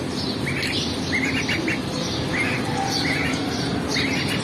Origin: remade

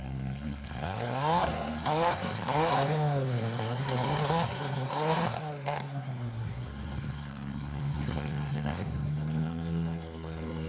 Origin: remade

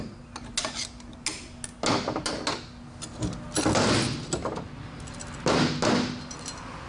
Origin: recorded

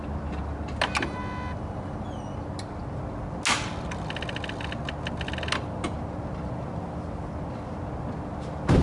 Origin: recorded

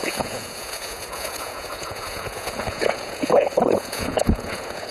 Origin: remade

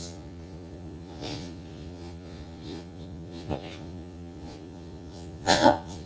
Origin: remade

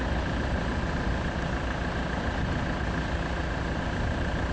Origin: recorded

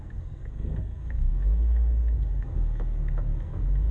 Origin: remade